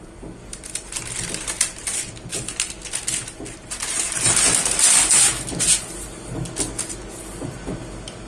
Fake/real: real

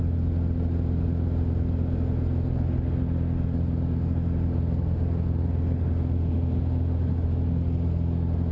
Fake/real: real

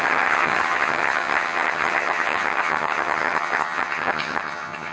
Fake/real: fake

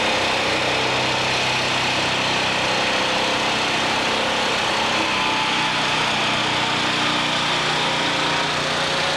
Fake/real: real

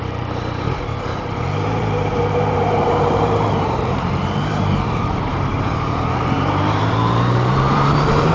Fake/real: fake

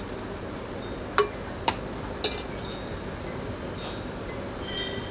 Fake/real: real